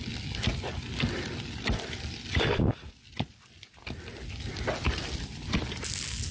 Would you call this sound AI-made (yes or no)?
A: no